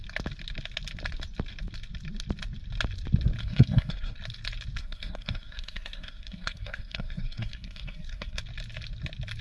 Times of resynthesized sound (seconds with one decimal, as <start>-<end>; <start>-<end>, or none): 3.4-4.2; 4.8-8.4